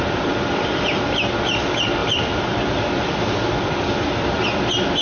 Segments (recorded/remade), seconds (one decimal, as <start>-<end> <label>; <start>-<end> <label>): 0.0-2.0 recorded; 2.0-3.2 remade; 3.2-5.0 recorded